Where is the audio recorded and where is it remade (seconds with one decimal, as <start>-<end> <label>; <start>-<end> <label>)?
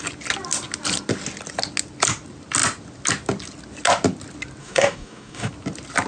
0.0-4.6 recorded; 4.6-5.5 remade; 5.5-6.1 recorded